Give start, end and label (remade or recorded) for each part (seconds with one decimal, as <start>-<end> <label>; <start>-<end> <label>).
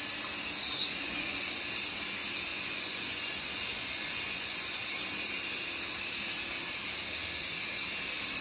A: 0.0-0.8 recorded; 0.8-1.6 remade; 1.6-2.5 recorded; 2.5-4.8 remade; 4.8-8.4 recorded